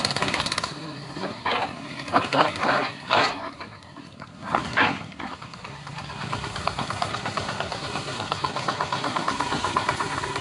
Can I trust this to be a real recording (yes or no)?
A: no